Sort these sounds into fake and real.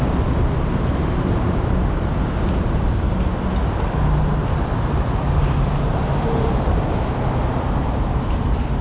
real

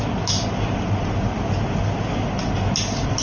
real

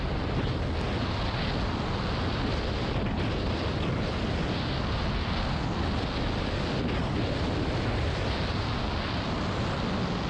real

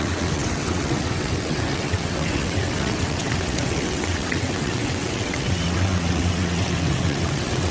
fake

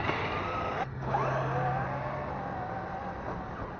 real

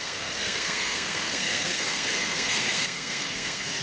fake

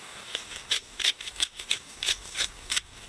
fake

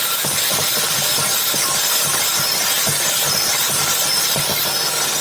real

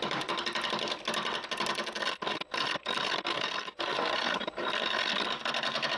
real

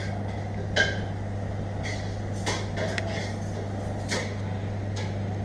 real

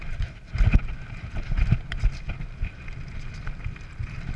real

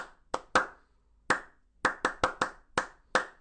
real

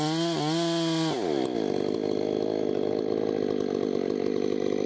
real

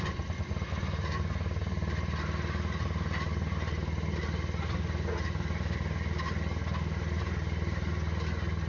real